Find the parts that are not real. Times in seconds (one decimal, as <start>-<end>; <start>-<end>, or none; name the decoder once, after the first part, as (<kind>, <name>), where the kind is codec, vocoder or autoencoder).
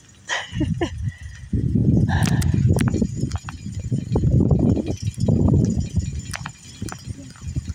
1.8-2.8 (vocoder, BigVGAN v2); 4.3-7.2